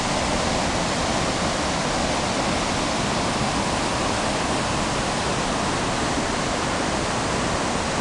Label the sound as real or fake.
real